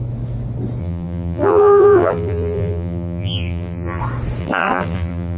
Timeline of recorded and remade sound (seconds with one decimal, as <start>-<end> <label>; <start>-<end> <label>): 0.0-0.8 recorded; 0.8-4.0 remade; 4.0-4.4 recorded; 4.4-5.4 remade